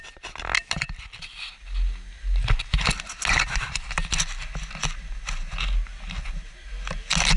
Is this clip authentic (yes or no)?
yes